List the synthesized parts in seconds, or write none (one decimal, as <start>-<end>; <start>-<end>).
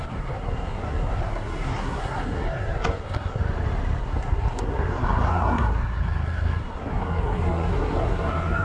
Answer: 0.0-3.4; 4.0-8.6